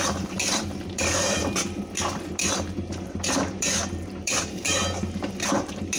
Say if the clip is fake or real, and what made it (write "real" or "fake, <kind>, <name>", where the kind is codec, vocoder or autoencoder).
fake, vocoder, BigVGAN v2